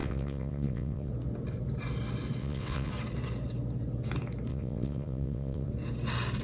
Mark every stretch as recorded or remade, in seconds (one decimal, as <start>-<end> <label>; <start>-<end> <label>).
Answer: 0.0-1.1 remade; 1.1-2.4 recorded; 2.4-2.9 remade; 2.9-4.5 recorded; 4.5-5.7 remade; 5.7-6.4 recorded